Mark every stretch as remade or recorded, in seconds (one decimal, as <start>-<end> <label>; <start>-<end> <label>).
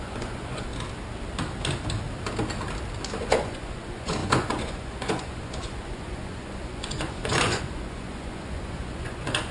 0.0-0.7 remade; 0.7-3.2 recorded; 3.2-9.5 remade